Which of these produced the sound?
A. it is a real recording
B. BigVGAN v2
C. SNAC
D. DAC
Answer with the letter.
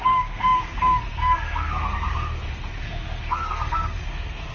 C